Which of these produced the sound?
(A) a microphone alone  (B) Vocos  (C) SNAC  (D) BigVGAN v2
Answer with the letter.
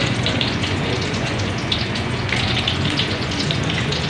B